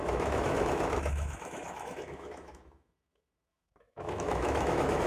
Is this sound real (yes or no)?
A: no